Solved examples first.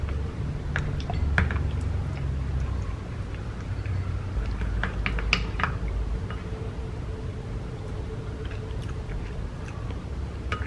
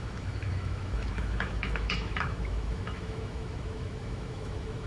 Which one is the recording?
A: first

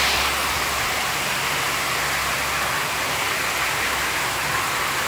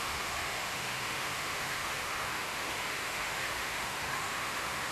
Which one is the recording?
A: first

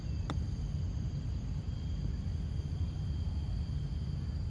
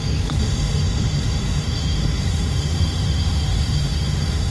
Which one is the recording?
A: first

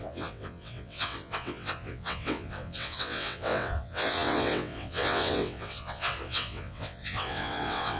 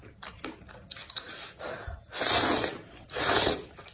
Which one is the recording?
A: second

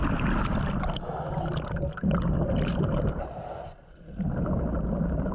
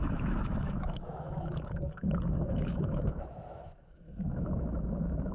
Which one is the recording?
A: first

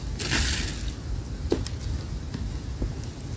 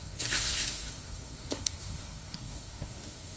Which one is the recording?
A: first